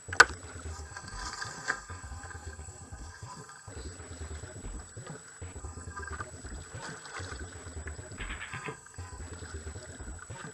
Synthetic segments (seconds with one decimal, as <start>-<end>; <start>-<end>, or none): 0.7-3.7; 5.6-6.1; 8.5-9.2